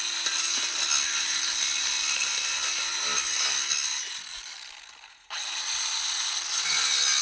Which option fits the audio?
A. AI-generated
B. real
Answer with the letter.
B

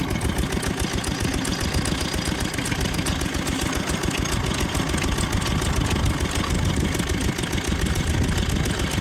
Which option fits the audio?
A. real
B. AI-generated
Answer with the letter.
A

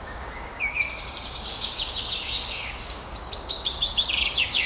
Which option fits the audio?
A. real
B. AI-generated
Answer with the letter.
B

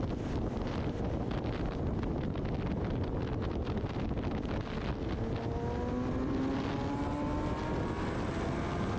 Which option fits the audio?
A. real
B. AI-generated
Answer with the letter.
A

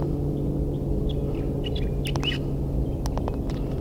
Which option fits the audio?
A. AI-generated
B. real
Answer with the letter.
B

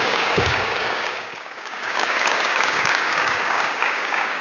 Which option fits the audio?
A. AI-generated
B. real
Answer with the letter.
A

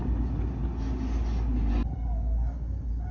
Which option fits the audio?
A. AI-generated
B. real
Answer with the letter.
B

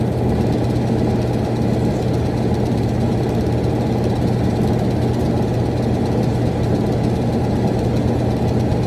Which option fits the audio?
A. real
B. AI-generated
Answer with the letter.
A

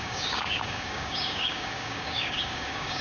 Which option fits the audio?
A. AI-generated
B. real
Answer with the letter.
A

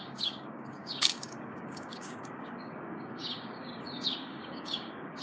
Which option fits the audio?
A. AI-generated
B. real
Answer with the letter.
A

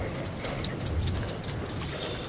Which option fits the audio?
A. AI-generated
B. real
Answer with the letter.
B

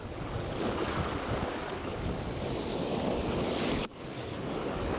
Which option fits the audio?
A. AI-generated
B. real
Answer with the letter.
A